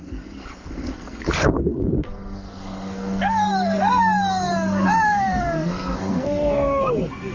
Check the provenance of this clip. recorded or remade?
remade